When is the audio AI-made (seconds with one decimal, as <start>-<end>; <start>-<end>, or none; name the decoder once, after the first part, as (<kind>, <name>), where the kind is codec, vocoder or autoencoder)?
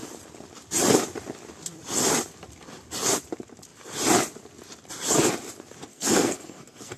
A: 5.9-7.0 (codec, SNAC)